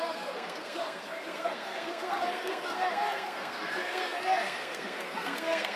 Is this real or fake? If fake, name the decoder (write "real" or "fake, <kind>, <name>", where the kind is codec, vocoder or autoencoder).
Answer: fake, codec, SNAC